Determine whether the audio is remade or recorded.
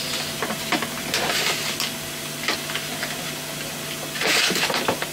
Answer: recorded